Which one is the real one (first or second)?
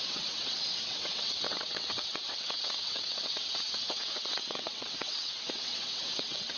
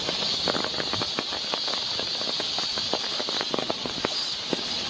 second